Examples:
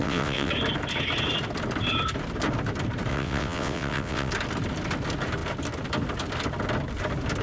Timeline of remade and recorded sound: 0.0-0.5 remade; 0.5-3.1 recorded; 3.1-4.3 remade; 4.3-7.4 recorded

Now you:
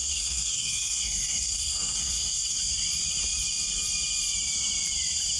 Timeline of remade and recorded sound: 0.0-2.6 remade; 2.6-5.4 recorded

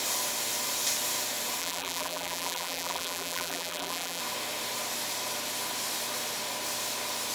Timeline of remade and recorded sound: 0.0-1.6 recorded; 1.6-4.2 remade; 4.2-7.3 recorded

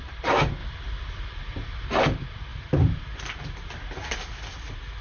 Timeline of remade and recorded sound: 0.0-2.5 recorded; 2.5-3.4 remade; 3.4-5.0 recorded

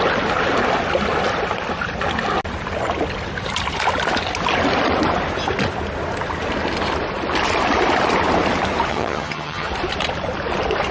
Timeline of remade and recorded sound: 0.0-8.9 recorded; 8.9-9.7 remade; 9.7-10.9 recorded

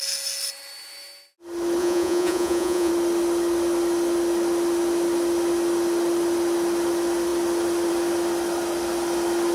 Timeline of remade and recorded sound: 0.0-1.8 recorded; 1.8-2.9 remade; 2.9-9.5 recorded

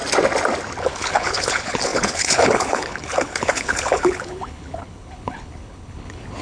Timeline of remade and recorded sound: 0.0-0.8 recorded; 0.8-6.4 remade